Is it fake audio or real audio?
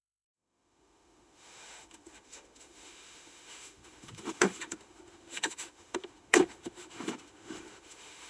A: fake